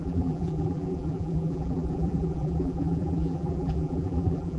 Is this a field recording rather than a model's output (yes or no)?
no